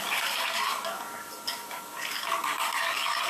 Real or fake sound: fake